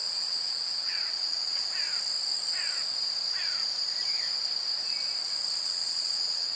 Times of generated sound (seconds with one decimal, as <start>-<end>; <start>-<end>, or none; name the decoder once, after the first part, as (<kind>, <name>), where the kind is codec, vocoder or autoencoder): 0.0-1.6 (vocoder, WaveNeXt); 5.6-6.6